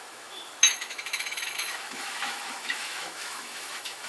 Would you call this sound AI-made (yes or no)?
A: yes